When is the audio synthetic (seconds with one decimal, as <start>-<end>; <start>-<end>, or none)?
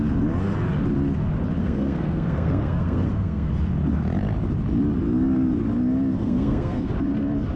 1.6-3.5; 6.2-6.9